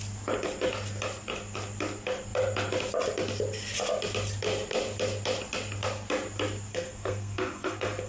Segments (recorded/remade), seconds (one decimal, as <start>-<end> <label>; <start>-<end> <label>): 0.0-6.7 recorded; 6.7-8.1 remade